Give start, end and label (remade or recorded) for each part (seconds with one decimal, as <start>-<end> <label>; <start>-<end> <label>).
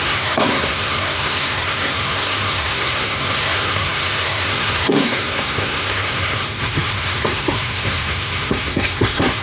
0.0-9.4 remade